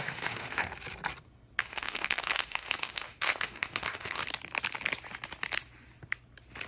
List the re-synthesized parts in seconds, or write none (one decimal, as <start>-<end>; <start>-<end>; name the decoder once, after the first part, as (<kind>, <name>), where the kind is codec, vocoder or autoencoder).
0.0-0.7 (autoencoder, DAC-VAE); 1.6-4.2